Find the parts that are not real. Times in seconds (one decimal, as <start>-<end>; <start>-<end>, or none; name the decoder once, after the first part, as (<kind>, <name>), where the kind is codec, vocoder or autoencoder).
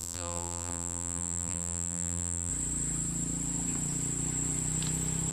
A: 0.0-2.5 (vocoder, BigVGAN v2)